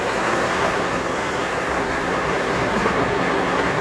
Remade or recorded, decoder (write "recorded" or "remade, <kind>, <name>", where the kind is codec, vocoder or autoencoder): remade, codec, SNAC